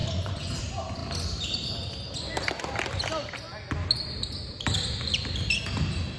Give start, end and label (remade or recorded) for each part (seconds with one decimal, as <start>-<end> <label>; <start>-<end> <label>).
0.0-0.6 remade; 0.6-6.2 recorded